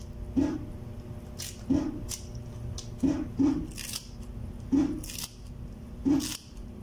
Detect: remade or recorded recorded